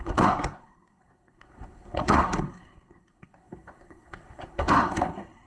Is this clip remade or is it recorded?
remade